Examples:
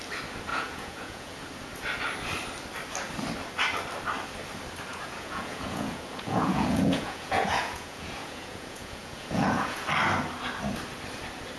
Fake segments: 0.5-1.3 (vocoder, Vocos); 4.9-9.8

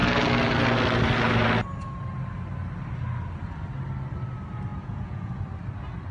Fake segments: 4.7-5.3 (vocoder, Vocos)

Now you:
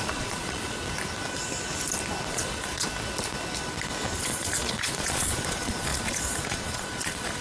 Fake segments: 0.0-0.8 (vocoder, Vocos); 2.3-2.9; 4.2-7.4

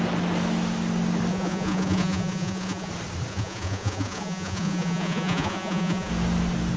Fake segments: 1.3-2.9 (vocoder, Vocos); 3.3-6.1

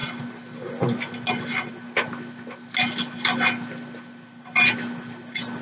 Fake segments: none

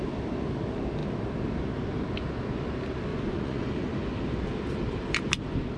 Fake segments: 3.1-3.9 (vocoder, Vocos)